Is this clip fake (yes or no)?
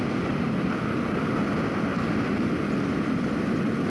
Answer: no